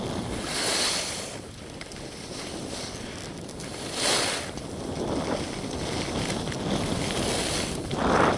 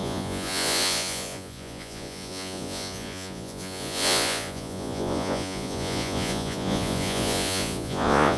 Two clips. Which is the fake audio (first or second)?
second